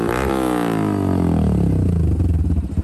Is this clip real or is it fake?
real